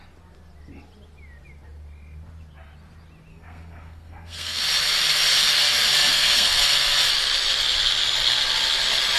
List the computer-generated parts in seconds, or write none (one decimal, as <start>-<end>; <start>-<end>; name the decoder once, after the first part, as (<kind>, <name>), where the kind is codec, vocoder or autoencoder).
3.3-4.6 (codec, SNAC); 6.1-6.6